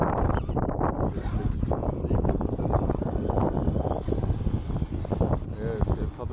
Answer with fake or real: real